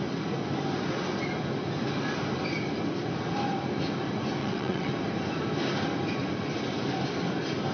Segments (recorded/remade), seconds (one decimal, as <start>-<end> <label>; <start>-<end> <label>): 0.0-4.4 recorded; 4.4-4.9 remade; 4.9-7.7 recorded